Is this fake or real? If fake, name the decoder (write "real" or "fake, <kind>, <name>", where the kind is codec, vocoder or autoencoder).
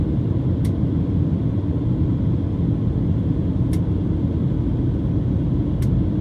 real